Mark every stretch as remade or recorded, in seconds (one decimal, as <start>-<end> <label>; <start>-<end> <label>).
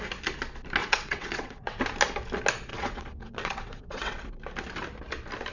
0.0-0.8 recorded; 0.8-1.8 remade; 1.8-2.7 recorded; 2.7-4.3 remade; 4.3-5.5 recorded